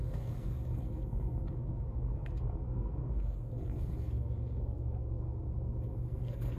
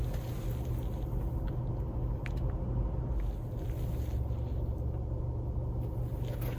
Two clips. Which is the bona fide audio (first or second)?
second